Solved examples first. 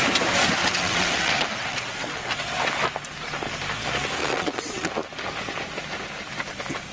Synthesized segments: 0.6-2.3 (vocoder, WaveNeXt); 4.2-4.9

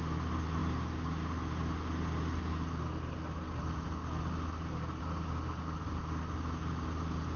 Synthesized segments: none

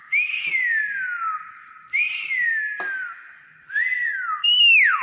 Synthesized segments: none

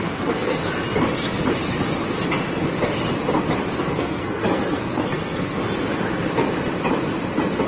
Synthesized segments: 0.0-0.6 (codec, SNAC); 3.8-5.6

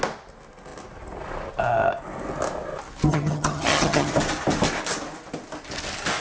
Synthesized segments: 3.1-4.1 (vocoder, HiFi-GAN)

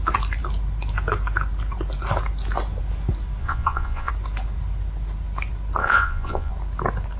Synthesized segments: 3.4-4.1 (vocoder, Vocos); 5.8-6.5